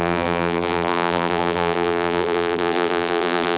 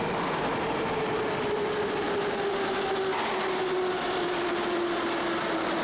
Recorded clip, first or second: second